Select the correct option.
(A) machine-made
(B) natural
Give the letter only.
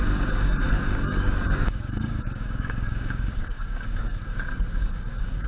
A